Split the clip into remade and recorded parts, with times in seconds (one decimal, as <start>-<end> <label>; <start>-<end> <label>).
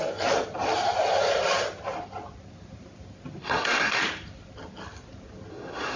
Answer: 0.0-3.4 recorded; 3.4-4.0 remade; 4.0-5.5 recorded; 5.5-6.0 remade